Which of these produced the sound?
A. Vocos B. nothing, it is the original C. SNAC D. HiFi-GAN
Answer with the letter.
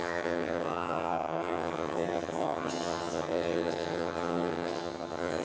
D